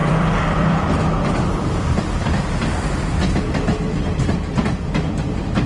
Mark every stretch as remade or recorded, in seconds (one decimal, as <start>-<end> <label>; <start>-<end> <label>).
0.0-3.4 remade; 3.4-5.7 recorded